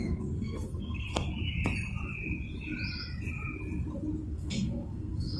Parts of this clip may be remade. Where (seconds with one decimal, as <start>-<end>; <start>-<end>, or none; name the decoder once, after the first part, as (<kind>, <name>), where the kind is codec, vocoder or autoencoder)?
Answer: 0.0-1.1 (codec, SNAC); 4.3-5.4